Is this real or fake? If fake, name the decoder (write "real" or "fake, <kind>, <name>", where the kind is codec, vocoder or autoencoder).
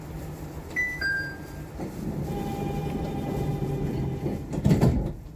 fake, vocoder, BigVGAN v2